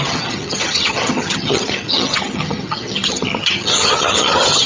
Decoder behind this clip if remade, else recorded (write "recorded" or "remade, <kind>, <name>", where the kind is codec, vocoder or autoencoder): remade, vocoder, HiFi-GAN